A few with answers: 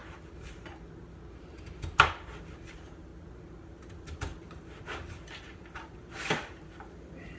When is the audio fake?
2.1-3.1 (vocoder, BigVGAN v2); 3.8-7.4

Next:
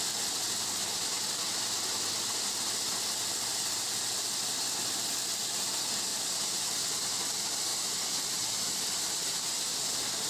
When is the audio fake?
6.1-6.8 (vocoder, BigVGAN v2); 7.7-9.7

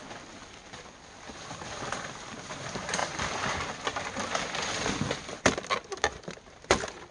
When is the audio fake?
3.0-3.8 (vocoder, BigVGAN v2)